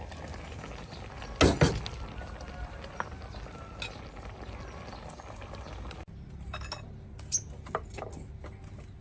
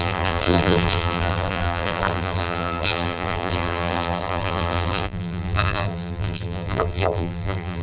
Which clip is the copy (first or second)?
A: second